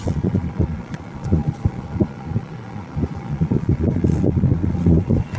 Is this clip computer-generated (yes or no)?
yes